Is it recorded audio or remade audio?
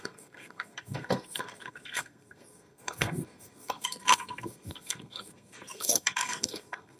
remade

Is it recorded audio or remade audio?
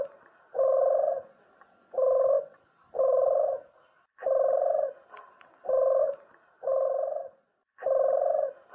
recorded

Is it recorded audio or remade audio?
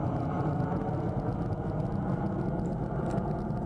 recorded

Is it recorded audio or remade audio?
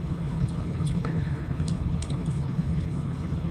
remade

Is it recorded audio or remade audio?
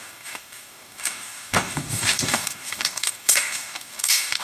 remade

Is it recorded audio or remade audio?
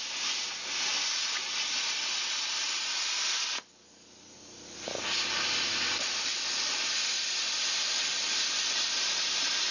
recorded